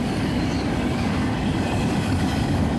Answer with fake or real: fake